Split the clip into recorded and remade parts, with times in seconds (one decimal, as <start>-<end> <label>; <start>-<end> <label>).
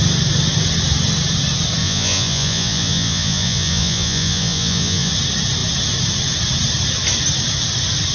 0.0-1.8 recorded; 1.8-5.1 remade; 5.1-8.1 recorded